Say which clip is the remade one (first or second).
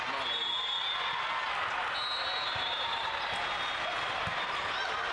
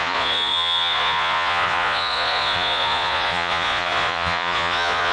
second